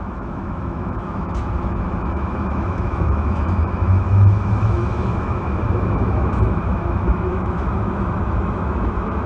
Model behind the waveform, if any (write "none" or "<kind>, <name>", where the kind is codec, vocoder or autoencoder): autoencoder, DAC-VAE